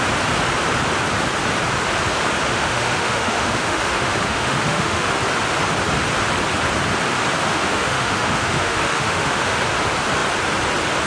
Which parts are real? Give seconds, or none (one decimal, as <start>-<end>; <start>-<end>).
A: 0.0-2.5; 5.2-7.5; 9.6-11.1